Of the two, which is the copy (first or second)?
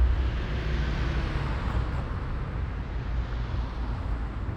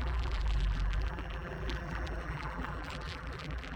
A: second